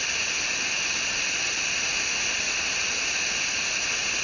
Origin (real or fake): real